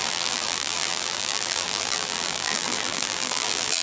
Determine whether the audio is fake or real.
fake